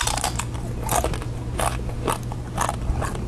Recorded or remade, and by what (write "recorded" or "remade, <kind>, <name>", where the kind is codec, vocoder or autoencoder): recorded